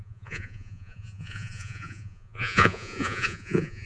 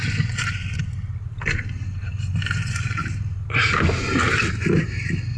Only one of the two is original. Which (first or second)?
second